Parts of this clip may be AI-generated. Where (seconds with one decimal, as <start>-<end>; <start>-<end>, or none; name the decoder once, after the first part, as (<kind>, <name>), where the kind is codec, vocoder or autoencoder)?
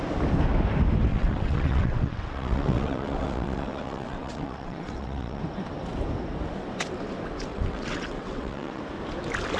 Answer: 1.1-5.4 (vocoder, WaveNeXt); 7.5-8.8